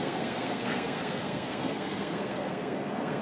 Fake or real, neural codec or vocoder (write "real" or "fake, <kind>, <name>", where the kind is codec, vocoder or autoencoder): fake, codec, SNAC